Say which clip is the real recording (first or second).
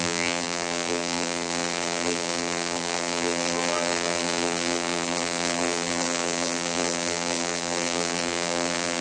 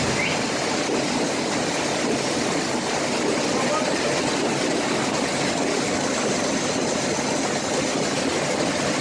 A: second